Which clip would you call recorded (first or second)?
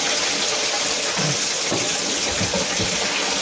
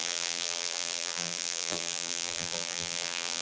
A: first